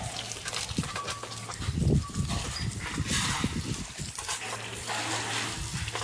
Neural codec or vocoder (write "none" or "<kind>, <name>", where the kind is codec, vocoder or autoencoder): none